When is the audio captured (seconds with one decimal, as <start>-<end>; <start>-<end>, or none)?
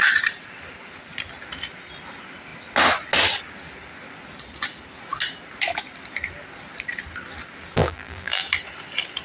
0.0-7.8; 8.4-9.2